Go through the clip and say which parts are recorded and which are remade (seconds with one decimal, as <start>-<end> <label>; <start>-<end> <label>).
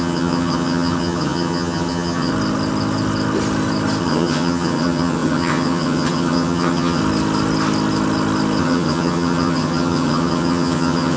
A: 0.0-2.3 remade; 2.3-4.0 recorded; 4.0-7.0 remade; 7.0-8.6 recorded; 8.6-11.2 remade